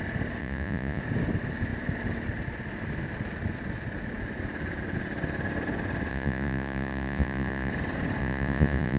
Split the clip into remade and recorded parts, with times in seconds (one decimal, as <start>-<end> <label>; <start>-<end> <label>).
0.0-0.4 recorded; 0.4-1.0 remade; 1.0-6.1 recorded; 6.1-7.7 remade; 7.7-8.2 recorded; 8.2-9.0 remade